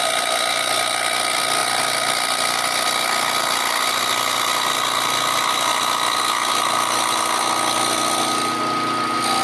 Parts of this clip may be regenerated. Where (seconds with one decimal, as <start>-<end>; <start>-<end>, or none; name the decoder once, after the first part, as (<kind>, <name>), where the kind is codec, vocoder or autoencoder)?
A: 5.7-6.2 (vocoder, BigVGAN v2)